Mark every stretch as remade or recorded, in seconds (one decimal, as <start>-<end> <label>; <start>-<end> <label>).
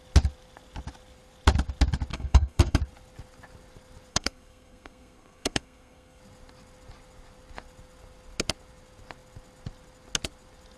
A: 0.0-2.1 recorded; 2.1-2.8 remade; 2.8-4.1 recorded; 4.1-6.2 remade; 6.2-10.8 recorded